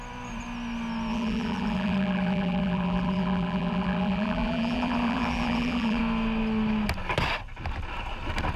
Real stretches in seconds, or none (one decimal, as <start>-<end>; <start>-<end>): 0.0-1.1; 6.0-8.6